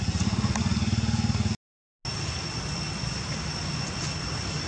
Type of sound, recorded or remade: recorded